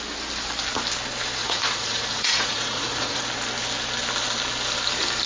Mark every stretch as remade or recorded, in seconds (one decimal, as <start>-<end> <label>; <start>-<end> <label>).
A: 0.0-1.4 recorded; 1.4-3.2 remade; 3.2-5.3 recorded